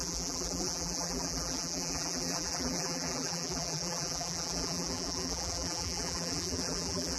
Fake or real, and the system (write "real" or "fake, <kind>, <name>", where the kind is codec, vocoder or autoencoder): fake, vocoder, BigVGAN v2